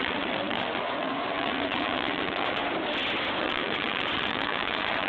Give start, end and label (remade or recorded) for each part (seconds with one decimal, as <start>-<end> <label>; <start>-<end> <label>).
0.0-2.6 remade; 2.6-3.4 recorded; 3.4-5.1 remade